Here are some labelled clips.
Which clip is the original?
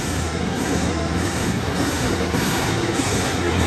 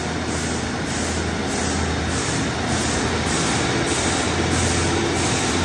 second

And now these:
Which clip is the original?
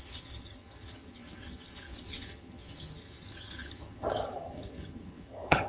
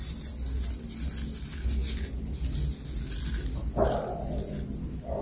second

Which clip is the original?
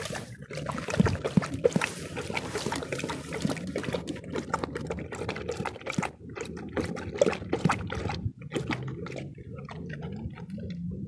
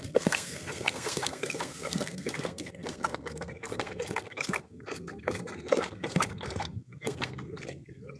first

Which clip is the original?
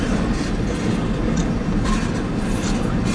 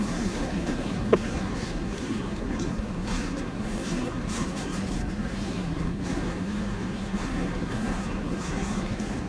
first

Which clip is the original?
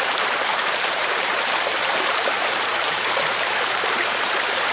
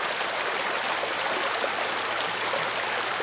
second